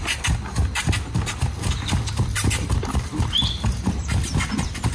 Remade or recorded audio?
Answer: recorded